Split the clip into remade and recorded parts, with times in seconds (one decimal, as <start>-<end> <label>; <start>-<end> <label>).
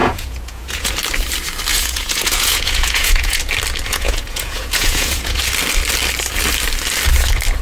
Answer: 0.0-0.9 remade; 0.9-1.7 recorded; 1.7-3.4 remade; 3.4-3.9 recorded; 3.9-5.4 remade; 5.4-7.6 recorded